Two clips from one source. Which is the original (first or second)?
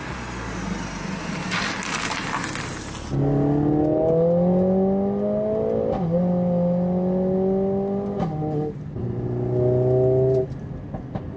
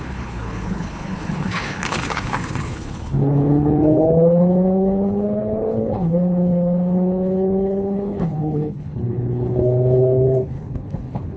first